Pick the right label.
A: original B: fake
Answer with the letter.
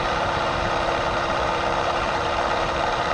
B